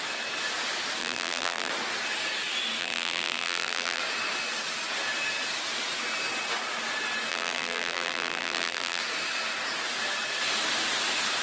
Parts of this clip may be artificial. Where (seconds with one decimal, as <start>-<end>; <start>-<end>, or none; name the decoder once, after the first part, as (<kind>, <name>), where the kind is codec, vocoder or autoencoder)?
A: 1.0-1.7 (vocoder, BigVGAN v2); 2.8-4.0; 7.3-9.0